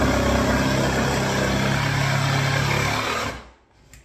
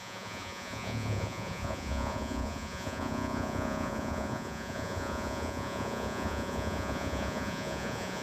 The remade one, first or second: second